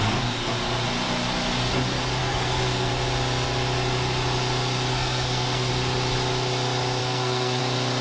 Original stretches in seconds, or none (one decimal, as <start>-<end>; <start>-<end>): 0.0-2.2; 2.9-4.9; 5.7-7.0; 7.6-8.0